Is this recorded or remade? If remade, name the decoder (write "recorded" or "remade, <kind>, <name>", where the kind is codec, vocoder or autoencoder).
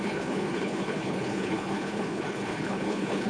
remade, codec, HILCodec